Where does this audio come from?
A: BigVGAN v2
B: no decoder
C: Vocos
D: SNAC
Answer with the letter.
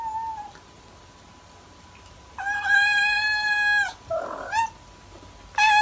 B